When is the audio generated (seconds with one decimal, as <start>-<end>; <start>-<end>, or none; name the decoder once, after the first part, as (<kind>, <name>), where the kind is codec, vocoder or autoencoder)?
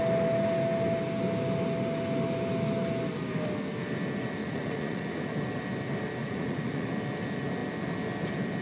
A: 4.4-5.2 (vocoder, Vocos); 6.2-6.9